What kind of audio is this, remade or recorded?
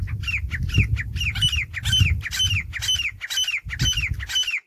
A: recorded